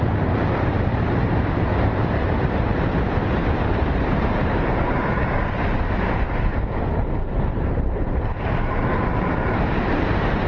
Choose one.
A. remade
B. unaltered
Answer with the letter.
A